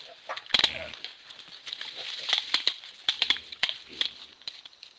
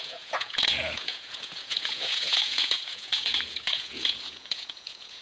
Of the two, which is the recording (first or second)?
first